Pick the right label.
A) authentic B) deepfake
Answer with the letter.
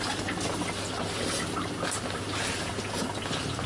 A